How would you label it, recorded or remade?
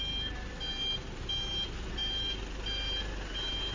recorded